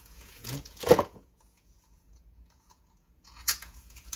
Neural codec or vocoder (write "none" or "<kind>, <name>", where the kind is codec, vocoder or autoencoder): vocoder, Vocos